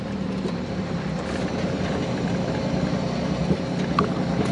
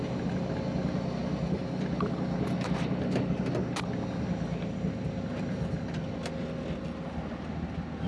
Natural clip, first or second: second